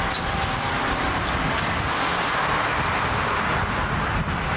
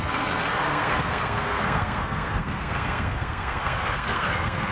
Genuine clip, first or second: first